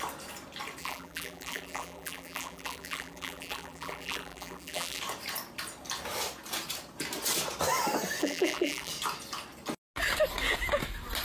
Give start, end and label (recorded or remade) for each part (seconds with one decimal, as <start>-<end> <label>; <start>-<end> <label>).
0.0-0.8 recorded; 0.8-5.0 remade; 5.0-8.2 recorded; 8.2-8.9 remade; 8.9-11.2 recorded